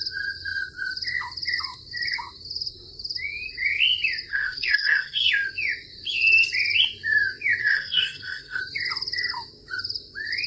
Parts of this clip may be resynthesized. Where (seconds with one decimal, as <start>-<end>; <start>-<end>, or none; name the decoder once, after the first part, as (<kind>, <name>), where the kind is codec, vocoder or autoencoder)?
4.3-5.3 (codec, SNAC); 7.6-8.6